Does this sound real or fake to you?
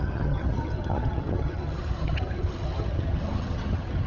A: fake